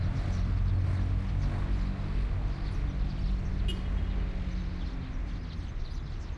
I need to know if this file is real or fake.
real